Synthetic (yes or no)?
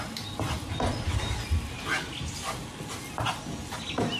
no